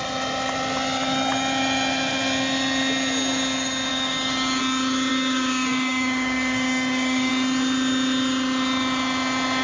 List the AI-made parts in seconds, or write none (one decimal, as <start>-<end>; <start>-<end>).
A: 3.9-4.6; 5.1-7.3